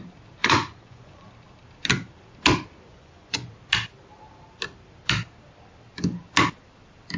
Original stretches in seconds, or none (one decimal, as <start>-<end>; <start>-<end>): 0.0-0.4; 1.3-2.9; 3.5-7.2